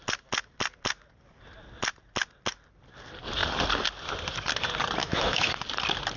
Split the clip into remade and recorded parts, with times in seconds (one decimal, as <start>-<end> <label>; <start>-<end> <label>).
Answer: 0.0-5.0 recorded; 5.0-5.5 remade; 5.5-6.2 recorded